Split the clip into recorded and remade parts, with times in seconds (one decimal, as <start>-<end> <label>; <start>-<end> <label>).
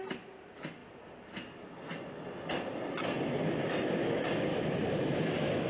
0.0-4.5 recorded; 4.5-5.3 remade; 5.3-5.7 recorded